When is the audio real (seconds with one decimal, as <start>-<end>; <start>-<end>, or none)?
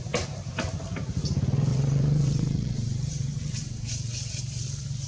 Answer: 0.0-1.7; 4.4-5.1